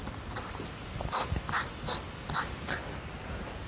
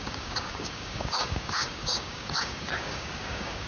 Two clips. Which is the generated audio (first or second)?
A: second